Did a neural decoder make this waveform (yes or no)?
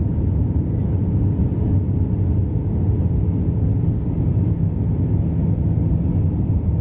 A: no